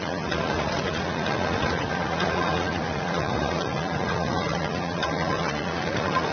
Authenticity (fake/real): fake